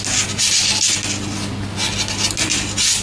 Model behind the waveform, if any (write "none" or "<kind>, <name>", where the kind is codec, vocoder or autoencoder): none